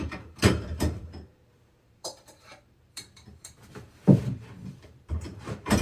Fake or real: fake